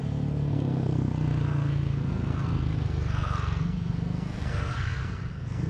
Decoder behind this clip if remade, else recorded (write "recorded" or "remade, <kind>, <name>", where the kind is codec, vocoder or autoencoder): remade, codec, SNAC